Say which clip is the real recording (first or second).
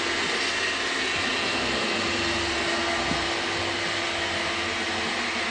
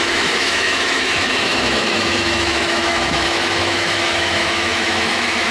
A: first